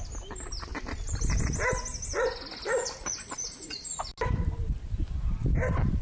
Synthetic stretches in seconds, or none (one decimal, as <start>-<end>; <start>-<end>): none